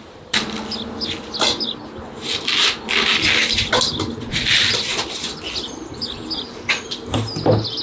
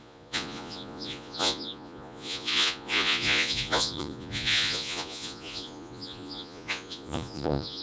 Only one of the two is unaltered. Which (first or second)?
first